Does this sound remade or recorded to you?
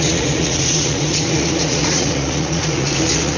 remade